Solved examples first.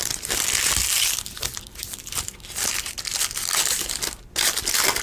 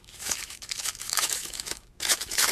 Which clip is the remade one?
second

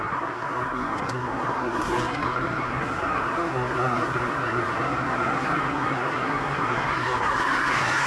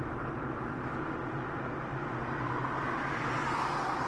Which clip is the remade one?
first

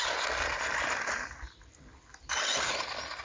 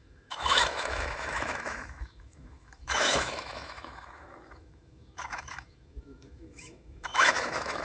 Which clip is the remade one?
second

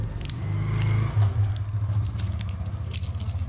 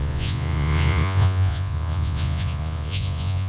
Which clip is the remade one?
second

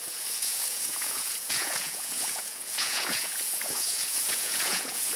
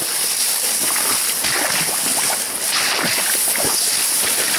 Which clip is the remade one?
first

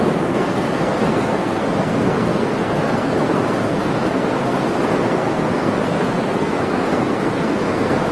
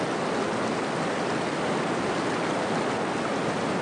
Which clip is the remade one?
first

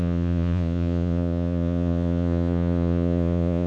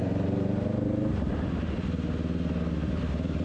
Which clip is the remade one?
first